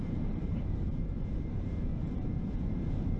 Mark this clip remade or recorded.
remade